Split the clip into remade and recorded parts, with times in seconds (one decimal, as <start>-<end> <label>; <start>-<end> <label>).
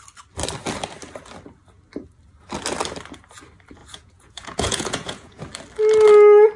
0.0-3.8 recorded; 3.8-5.4 remade; 5.4-6.6 recorded